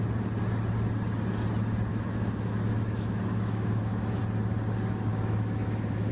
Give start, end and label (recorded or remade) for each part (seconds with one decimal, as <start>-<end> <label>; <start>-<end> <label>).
0.0-1.9 recorded; 1.9-4.2 remade; 4.2-5.1 recorded; 5.1-6.1 remade